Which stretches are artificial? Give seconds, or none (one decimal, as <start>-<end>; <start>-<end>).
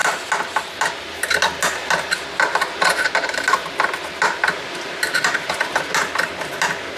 none